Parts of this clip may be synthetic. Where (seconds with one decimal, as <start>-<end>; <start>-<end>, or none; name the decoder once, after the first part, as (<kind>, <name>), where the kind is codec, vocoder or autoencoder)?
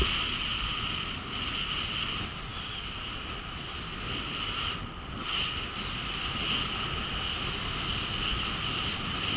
none